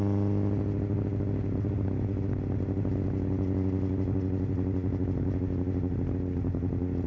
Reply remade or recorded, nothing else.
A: recorded